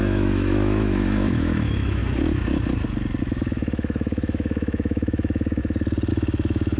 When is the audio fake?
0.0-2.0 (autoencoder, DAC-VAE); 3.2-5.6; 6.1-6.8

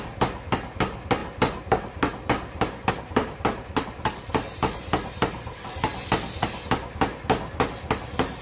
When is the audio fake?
none